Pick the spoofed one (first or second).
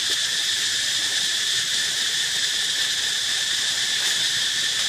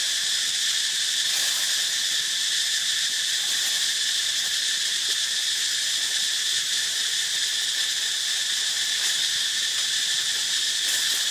first